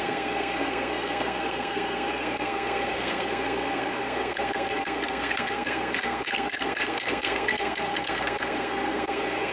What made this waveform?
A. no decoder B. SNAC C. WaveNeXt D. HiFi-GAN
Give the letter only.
B